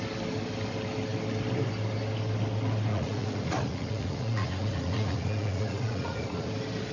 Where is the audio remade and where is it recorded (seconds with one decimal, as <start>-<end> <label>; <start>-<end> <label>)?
0.0-2.9 recorded; 2.9-6.5 remade; 6.5-6.9 recorded